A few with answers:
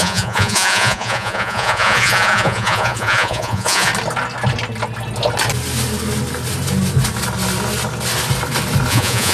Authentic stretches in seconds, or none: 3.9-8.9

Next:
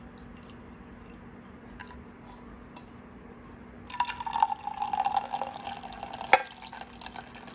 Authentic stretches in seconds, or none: 0.0-7.5